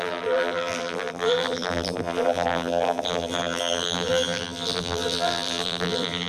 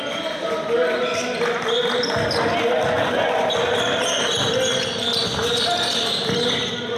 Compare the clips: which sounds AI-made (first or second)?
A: first